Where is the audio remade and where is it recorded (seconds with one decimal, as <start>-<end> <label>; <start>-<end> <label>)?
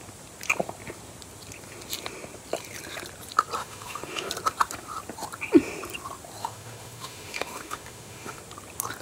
0.0-3.6 recorded; 3.6-4.3 remade; 4.3-6.4 recorded; 6.4-8.4 remade; 8.4-9.0 recorded